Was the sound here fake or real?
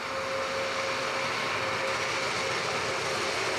real